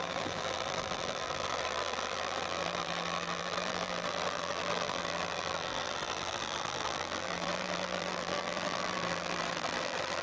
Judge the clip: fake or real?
fake